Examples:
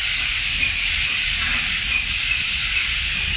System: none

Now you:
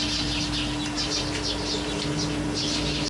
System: none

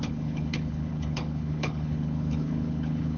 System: codec, HILCodec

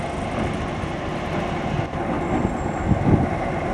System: none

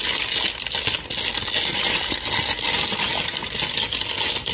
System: none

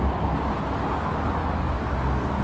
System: none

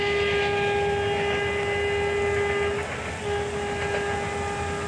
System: none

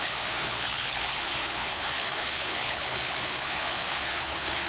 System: codec, HILCodec